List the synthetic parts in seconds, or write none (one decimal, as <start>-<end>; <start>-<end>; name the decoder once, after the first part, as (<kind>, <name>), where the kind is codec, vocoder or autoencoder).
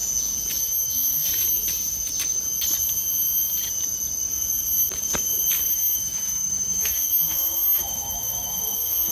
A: 0.6-1.3 (autoencoder, DAC-VAE); 5.7-9.1